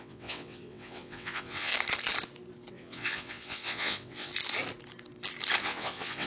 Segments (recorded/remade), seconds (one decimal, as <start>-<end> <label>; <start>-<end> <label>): 0.0-1.7 remade; 1.7-2.7 recorded; 2.7-4.3 remade; 4.3-5.6 recorded; 5.6-6.3 remade